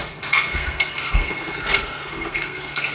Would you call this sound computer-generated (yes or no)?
yes